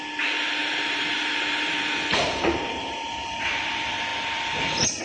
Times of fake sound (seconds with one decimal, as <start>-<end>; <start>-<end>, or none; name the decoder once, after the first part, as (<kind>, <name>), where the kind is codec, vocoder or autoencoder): 0.6-3.5 (vocoder, BigVGAN v2)

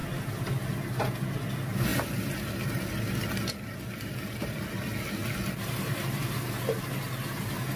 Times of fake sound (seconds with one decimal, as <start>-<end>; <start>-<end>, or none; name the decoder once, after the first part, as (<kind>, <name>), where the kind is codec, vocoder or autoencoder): none

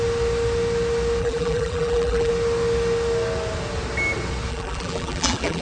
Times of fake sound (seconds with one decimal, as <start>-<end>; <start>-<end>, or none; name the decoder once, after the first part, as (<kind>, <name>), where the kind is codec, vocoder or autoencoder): 1.2-2.3 (vocoder, BigVGAN v2); 4.5-5.6

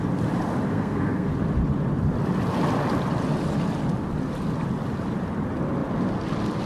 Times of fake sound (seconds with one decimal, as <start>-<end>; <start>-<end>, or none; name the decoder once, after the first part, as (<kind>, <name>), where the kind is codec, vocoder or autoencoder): 0.7-1.3 (codec, SNAC)

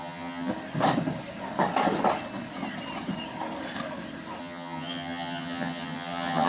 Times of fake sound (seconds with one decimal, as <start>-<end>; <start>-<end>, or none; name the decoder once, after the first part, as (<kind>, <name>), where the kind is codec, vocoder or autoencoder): 0.0-0.5 (vocoder, HiFi-GAN); 4.4-6.5

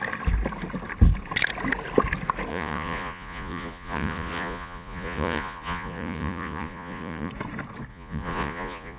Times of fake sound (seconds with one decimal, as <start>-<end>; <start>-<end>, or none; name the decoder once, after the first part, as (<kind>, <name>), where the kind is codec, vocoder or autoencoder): 2.5-7.3 (vocoder, Vocos); 7.9-9.0

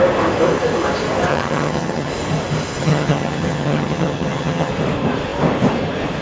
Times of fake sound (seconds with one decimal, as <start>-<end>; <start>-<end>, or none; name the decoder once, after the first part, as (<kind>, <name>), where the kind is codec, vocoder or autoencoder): 1.3-2.1 (vocoder, HiFi-GAN); 2.8-4.7

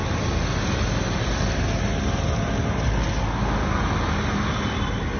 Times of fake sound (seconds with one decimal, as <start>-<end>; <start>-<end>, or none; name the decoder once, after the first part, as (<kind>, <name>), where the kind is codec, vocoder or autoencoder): none